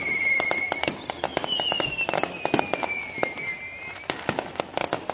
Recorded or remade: recorded